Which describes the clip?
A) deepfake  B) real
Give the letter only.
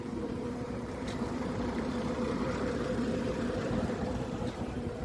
A